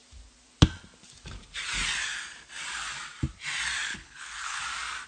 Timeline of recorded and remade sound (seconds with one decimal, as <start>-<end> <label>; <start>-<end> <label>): 0.0-3.9 recorded; 3.9-4.6 remade; 4.6-5.1 recorded